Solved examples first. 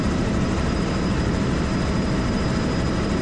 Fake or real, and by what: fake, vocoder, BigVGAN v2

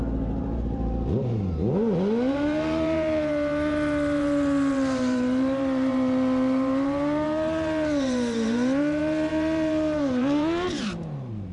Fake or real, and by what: fake, vocoder, BigVGAN v2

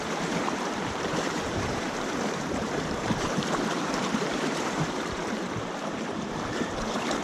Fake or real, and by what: fake, vocoder, BigVGAN v2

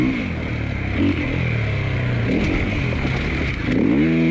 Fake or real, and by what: real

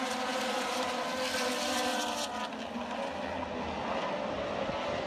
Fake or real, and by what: real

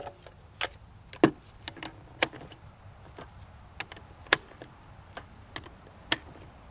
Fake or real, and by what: real